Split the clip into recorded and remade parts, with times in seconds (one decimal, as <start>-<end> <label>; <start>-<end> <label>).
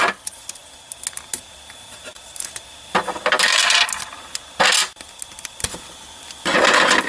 0.0-7.1 recorded